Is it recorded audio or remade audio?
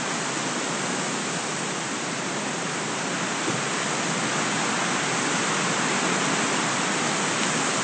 recorded